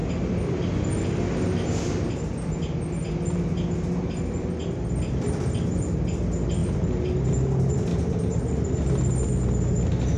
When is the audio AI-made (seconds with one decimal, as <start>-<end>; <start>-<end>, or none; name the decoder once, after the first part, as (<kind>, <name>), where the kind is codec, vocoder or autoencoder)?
7.9-8.4 (vocoder, BigVGAN v2)